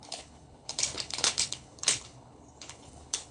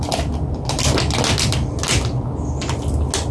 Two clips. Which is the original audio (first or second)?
second